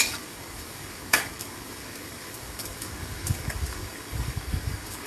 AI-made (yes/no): yes